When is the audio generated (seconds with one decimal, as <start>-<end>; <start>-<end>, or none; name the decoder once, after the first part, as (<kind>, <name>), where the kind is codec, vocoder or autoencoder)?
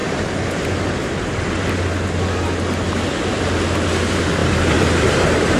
4.4-5.6 (vocoder, BigVGAN v2)